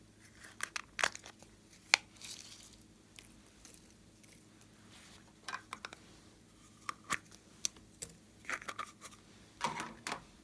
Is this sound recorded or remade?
recorded